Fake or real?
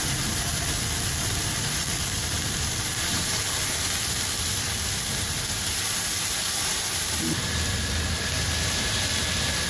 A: fake